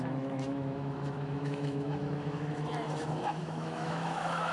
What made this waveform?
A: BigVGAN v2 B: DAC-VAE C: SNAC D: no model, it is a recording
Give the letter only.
B